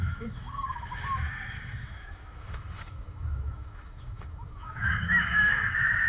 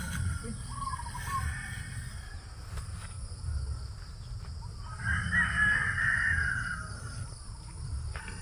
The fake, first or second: first